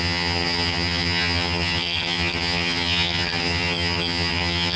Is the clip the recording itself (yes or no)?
no